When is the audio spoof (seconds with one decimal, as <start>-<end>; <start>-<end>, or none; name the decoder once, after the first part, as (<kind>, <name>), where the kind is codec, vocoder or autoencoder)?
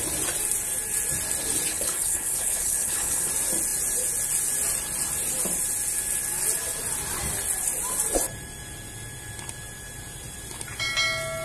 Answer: 1.7-3.3 (codec, HILCodec)